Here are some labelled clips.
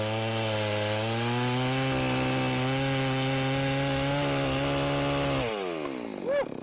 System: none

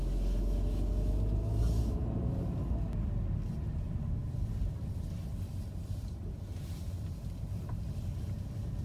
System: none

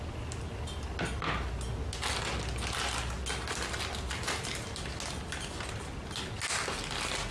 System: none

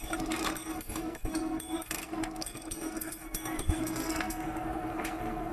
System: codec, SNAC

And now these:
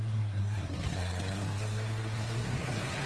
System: codec, SNAC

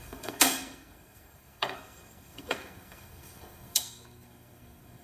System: codec, SNAC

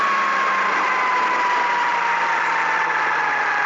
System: none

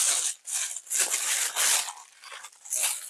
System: none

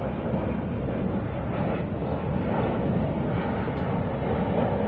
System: none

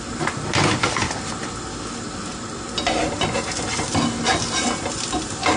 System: none